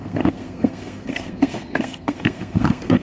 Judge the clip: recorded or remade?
remade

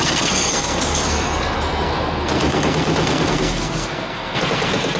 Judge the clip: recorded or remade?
remade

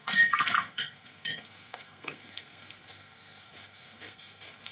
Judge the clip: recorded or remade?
remade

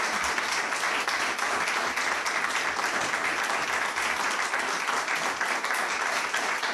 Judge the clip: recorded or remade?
recorded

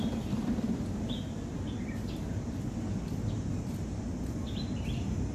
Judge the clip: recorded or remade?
recorded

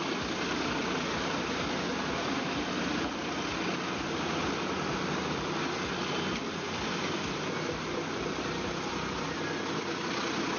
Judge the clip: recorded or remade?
recorded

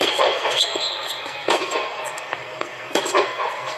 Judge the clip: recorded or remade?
remade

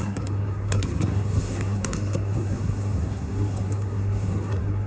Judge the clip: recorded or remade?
remade